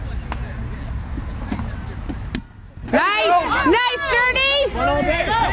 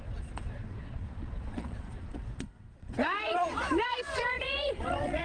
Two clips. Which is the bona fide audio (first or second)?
first